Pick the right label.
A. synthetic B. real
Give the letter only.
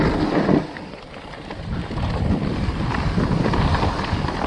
B